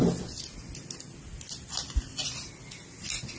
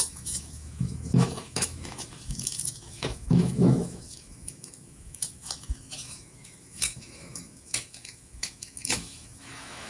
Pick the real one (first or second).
first